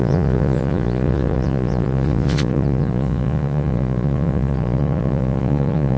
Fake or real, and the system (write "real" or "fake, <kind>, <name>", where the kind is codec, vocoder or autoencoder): fake, vocoder, Vocos